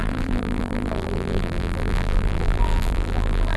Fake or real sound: fake